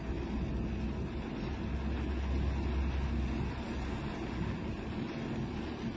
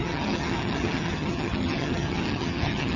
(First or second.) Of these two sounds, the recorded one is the first